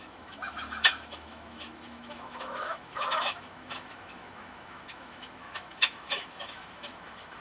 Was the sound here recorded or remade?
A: remade